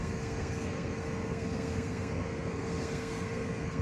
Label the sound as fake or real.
fake